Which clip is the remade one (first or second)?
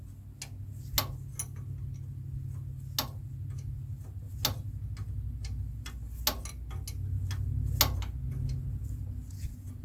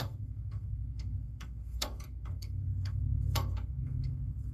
second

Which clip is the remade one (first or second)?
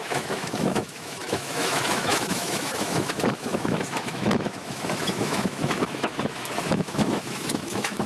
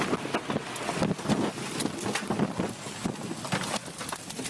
first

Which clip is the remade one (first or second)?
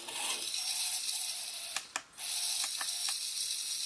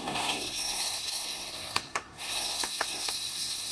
second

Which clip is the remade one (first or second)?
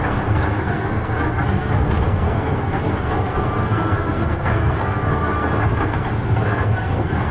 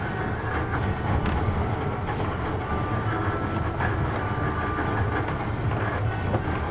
first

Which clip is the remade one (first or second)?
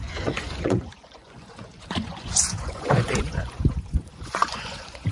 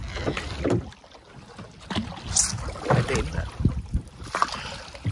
first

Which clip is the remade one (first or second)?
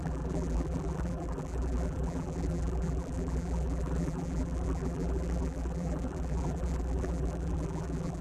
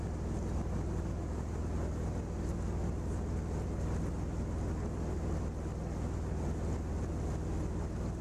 first